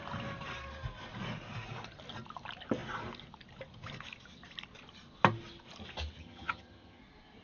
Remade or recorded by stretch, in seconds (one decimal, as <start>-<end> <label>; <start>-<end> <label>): 0.0-6.2 recorded; 6.2-7.0 remade; 7.0-7.4 recorded